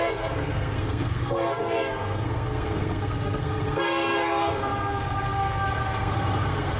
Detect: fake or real fake